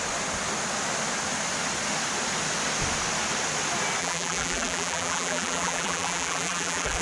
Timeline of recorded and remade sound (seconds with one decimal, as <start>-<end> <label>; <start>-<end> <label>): 0.0-4.0 recorded; 4.0-7.0 remade